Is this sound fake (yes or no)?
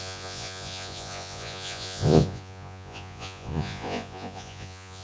yes